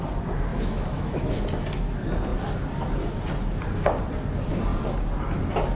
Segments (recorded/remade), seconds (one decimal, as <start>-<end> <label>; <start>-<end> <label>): 0.0-0.5 recorded; 0.5-1.4 remade; 1.4-5.7 recorded

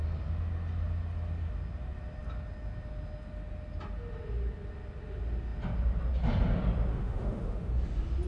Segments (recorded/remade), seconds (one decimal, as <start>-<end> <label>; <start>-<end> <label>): 0.0-6.9 recorded; 6.9-7.7 remade; 7.7-8.3 recorded